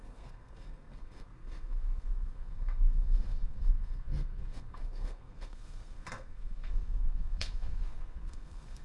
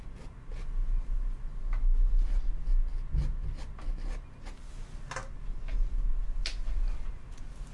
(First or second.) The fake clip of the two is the first